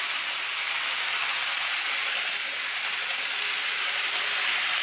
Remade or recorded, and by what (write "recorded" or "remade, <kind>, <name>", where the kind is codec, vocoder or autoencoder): recorded